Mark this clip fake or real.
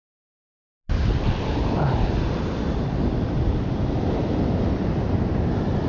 real